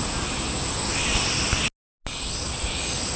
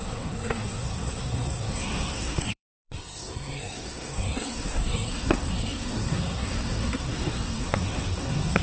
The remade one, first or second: second